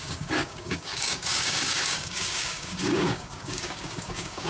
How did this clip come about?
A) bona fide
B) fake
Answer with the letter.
B